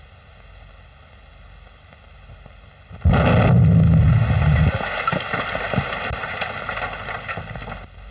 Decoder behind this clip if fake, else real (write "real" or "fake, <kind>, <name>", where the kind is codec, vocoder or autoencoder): real